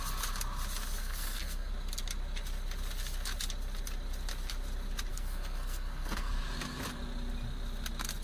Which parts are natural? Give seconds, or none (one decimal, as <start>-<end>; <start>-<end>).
0.0-1.0; 1.7-5.1; 6.3-8.2